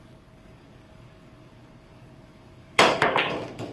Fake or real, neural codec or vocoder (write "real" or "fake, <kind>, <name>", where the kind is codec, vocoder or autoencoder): fake, codec, DAC